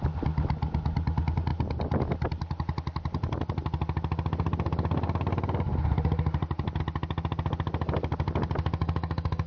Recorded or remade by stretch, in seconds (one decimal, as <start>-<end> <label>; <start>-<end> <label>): 0.0-8.8 recorded; 8.8-9.5 remade